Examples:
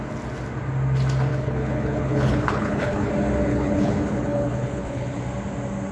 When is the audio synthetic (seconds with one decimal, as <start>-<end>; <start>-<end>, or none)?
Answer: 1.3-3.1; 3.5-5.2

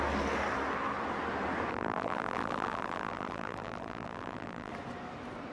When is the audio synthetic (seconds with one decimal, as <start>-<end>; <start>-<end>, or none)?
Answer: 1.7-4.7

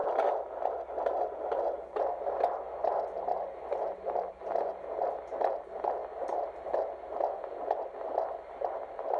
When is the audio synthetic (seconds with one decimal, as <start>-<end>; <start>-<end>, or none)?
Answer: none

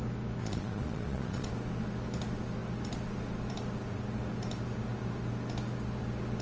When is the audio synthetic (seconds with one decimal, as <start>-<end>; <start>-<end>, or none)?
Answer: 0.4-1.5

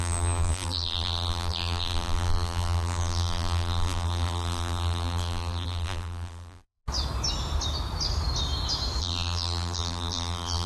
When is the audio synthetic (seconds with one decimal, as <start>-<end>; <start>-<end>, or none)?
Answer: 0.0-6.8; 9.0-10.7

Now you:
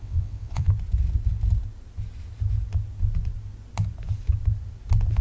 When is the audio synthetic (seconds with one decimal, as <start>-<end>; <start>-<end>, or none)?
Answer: 0.0-0.7

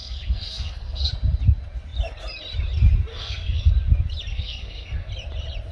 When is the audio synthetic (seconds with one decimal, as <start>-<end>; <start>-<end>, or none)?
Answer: 0.0-1.1; 3.1-3.7; 4.3-5.1